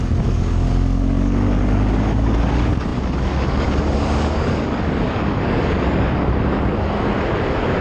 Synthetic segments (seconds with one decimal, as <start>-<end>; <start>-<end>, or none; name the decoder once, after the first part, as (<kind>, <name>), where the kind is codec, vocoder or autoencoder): 0.0-7.8 (codec, DAC)